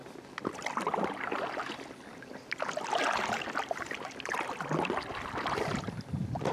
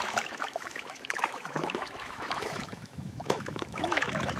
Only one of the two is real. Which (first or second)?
first